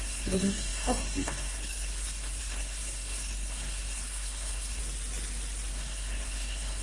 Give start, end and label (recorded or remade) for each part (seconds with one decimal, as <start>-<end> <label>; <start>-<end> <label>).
0.0-4.8 remade; 4.8-5.7 recorded; 5.7-6.8 remade